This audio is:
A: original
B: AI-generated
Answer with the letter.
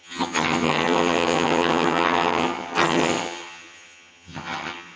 B